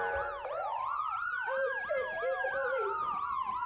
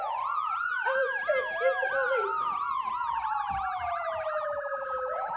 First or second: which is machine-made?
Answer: first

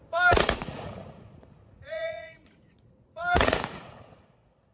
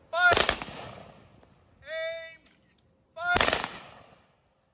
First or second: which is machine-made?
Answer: first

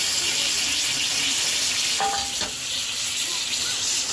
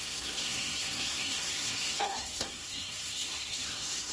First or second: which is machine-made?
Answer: second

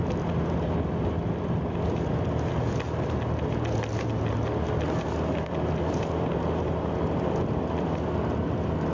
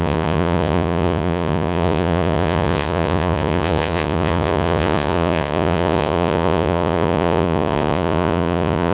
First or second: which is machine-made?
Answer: second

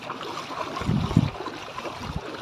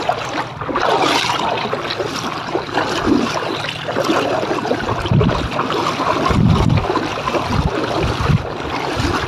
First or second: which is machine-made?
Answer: first